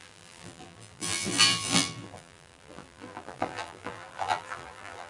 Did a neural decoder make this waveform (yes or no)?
yes